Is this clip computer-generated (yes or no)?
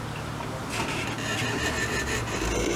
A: no